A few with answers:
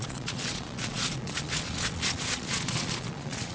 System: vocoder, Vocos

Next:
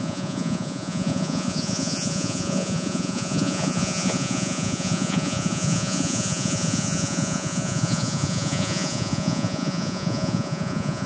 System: vocoder, Vocos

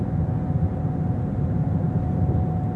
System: none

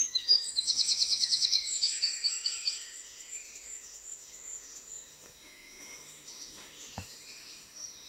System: autoencoder, DAC-VAE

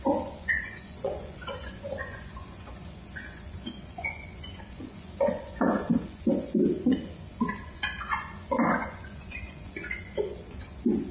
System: vocoder, Vocos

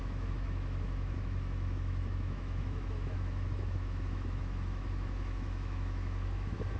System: autoencoder, DAC-VAE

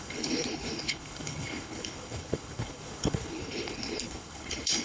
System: codec, HILCodec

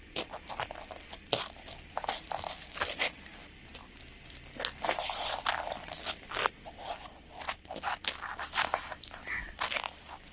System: vocoder, BigVGAN v2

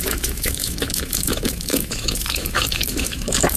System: autoencoder, DAC-VAE